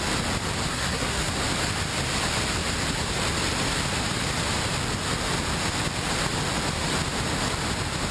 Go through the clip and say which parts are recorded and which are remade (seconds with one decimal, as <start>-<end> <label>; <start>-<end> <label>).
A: 0.0-0.7 recorded; 0.7-1.3 remade; 1.3-8.1 recorded